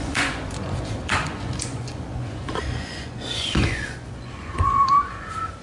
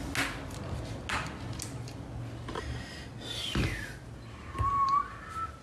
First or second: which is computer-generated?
first